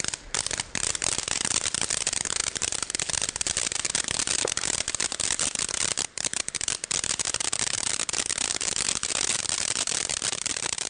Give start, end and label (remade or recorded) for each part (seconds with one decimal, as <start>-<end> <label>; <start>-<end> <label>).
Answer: 0.0-10.9 recorded